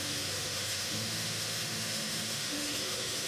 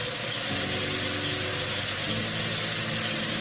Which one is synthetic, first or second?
first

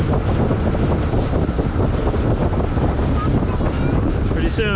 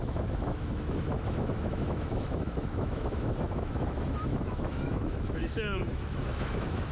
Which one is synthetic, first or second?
second